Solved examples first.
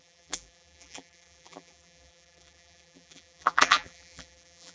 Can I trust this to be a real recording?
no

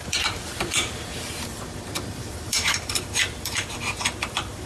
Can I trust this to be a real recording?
no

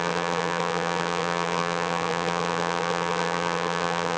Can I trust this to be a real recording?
no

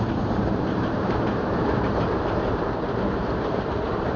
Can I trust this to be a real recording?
no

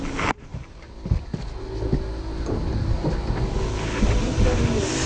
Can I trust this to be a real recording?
yes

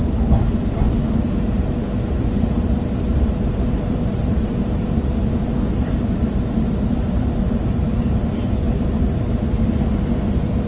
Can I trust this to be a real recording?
no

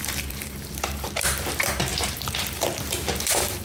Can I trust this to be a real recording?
no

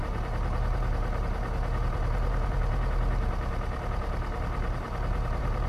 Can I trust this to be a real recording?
no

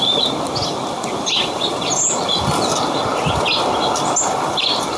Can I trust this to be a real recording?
yes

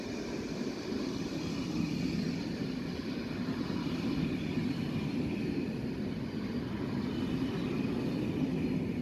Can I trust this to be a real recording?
yes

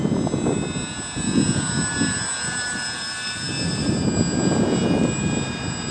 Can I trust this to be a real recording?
yes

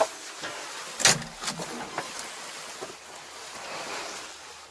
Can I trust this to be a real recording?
yes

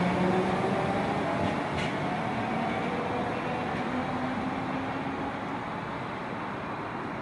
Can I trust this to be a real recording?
yes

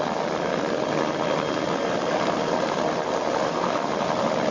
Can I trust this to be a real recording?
yes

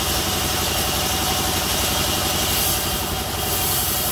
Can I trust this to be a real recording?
yes